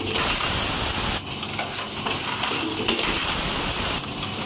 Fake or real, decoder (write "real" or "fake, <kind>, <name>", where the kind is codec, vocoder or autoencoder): real